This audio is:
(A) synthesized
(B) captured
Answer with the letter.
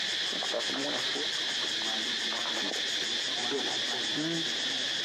B